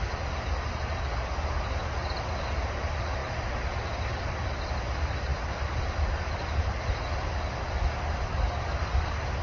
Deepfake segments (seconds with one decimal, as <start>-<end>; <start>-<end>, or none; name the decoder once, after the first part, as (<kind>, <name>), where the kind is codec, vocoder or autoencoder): none